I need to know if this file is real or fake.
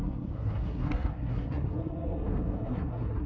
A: fake